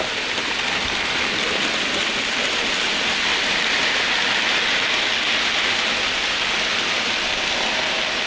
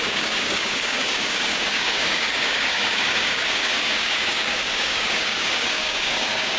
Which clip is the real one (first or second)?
first